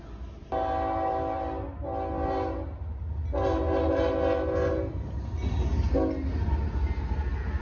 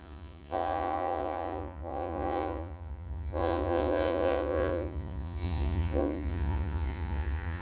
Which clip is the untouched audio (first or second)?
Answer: first